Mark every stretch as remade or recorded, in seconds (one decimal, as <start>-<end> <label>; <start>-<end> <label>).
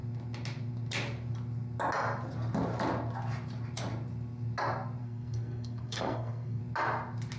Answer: 0.0-5.0 recorded; 5.0-6.6 remade; 6.6-7.4 recorded